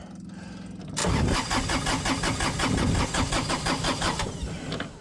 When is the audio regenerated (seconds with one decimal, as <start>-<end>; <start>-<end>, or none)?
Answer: none